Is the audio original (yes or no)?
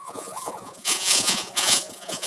no